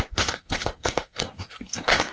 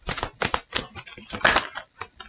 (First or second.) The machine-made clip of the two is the first